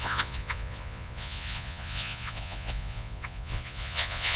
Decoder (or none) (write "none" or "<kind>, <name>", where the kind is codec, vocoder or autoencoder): vocoder, Vocos